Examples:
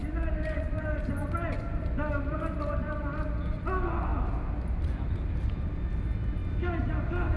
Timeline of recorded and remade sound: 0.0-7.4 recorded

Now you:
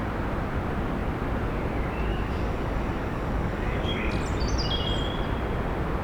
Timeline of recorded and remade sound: 0.0-2.1 recorded; 2.1-4.1 remade; 4.1-6.0 recorded

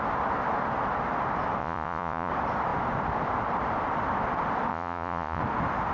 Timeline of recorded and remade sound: 0.0-1.6 recorded; 1.6-2.3 remade; 2.3-4.7 recorded; 4.7-5.4 remade; 5.4-5.9 recorded

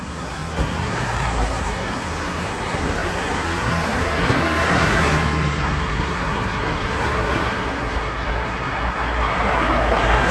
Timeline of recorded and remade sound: 0.0-10.3 remade

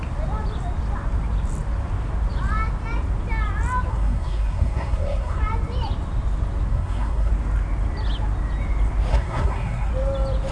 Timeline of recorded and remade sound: 0.0-3.9 recorded; 3.9-5.4 remade; 5.4-6.7 recorded; 6.7-7.3 remade; 7.3-9.1 recorded; 9.1-9.9 remade; 9.9-10.5 recorded